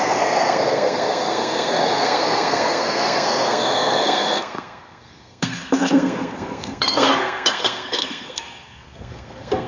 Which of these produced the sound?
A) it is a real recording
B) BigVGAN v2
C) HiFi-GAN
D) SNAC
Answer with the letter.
D